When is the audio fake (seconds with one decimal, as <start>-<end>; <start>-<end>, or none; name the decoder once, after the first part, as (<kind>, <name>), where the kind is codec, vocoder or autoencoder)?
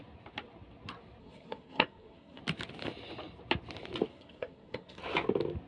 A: 1.2-2.4 (codec, SNAC); 4.1-5.0